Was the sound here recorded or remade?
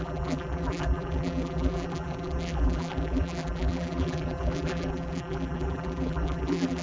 remade